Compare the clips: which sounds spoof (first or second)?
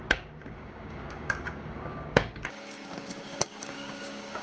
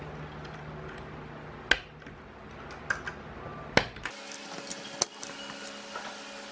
first